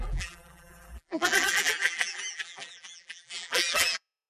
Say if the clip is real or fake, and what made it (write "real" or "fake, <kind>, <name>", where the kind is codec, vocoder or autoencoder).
fake, vocoder, BigVGAN v2